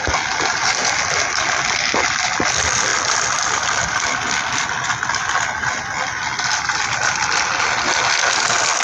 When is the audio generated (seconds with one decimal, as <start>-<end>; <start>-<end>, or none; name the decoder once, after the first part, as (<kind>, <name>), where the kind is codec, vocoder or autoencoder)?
none